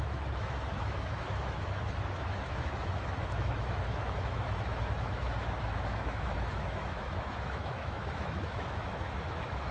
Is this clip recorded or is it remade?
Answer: remade